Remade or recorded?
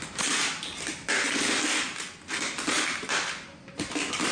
recorded